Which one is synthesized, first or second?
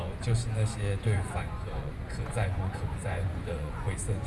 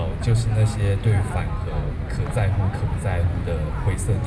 first